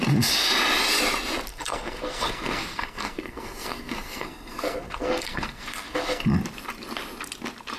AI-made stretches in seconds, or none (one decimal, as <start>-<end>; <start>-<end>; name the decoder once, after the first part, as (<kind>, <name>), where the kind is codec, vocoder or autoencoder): 1.5-6.2 (codec, SNAC)